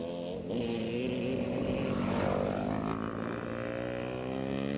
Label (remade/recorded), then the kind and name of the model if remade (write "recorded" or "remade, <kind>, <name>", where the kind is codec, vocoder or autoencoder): recorded